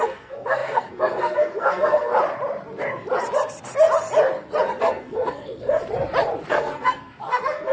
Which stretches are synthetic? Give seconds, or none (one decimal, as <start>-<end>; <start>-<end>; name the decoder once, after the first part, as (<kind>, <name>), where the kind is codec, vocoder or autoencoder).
0.0-2.1 (codec, SNAC); 4.8-5.8; 6.5-7.7